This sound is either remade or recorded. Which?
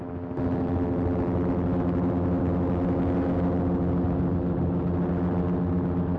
recorded